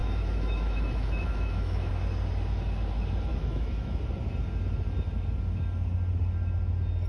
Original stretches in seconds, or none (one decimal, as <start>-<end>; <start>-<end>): 1.9-3.3; 4.0-7.1